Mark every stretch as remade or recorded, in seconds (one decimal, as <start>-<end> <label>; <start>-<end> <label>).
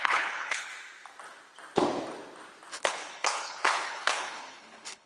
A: 0.0-0.7 remade; 0.7-2.7 recorded; 2.7-5.1 remade